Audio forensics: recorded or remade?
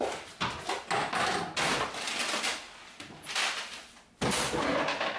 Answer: recorded